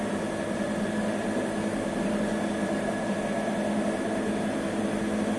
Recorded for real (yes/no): yes